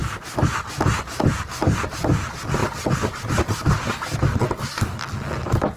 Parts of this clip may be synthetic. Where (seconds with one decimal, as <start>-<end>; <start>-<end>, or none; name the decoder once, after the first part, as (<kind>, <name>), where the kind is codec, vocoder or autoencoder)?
none